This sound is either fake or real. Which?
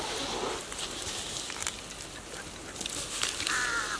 real